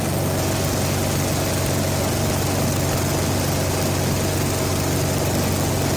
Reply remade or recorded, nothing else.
recorded